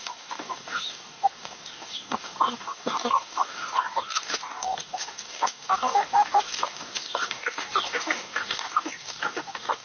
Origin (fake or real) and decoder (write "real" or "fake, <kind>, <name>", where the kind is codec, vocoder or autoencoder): fake, codec, DAC